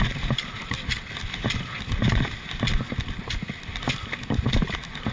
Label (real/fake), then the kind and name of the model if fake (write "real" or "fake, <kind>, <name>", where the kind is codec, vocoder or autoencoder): real